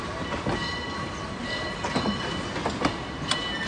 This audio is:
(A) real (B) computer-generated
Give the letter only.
A